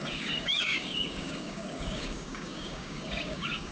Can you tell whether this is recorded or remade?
remade